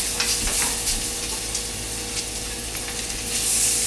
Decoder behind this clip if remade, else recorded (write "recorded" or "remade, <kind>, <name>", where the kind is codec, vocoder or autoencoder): recorded